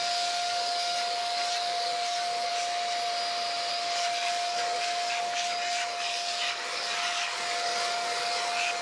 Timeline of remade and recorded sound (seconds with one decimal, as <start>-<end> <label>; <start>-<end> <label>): 0.0-2.5 remade; 2.5-3.7 recorded; 3.7-8.8 remade